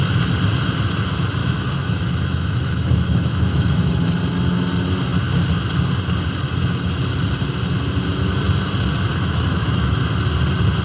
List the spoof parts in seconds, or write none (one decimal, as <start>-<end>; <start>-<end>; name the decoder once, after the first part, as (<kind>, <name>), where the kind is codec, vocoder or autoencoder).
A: 1.4-4.1 (autoencoder, DAC-VAE); 9.1-10.0